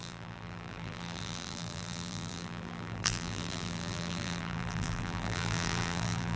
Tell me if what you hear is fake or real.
fake